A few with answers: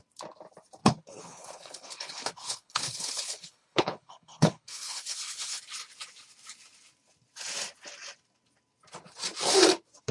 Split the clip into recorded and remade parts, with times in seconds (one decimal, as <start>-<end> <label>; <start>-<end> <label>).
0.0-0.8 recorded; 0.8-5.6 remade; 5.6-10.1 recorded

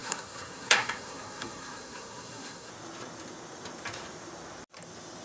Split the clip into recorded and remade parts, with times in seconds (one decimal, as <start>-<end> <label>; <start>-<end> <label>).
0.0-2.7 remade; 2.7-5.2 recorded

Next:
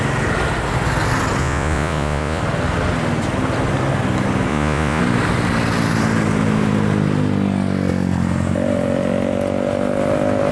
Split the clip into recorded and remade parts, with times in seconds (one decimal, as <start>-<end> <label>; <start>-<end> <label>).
0.0-1.4 recorded; 1.4-2.4 remade; 2.4-4.5 recorded; 4.5-5.0 remade; 5.0-10.5 recorded